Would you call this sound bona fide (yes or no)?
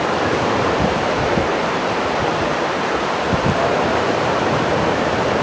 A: no